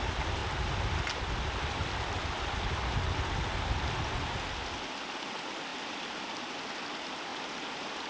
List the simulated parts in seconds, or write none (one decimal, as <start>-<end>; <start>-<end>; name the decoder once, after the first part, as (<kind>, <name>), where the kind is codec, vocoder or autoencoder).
5.7-6.6 (vocoder, BigVGAN v2); 7.3-8.1